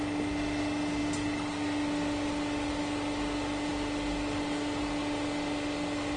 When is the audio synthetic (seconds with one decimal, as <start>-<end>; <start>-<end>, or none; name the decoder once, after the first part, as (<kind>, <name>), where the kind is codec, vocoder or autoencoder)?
none